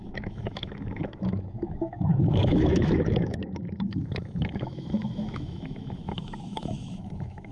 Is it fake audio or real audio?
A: fake